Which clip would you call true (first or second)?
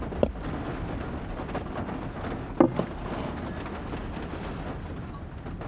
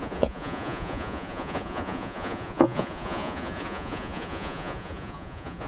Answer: first